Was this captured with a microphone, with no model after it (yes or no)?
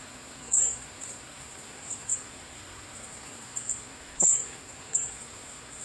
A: no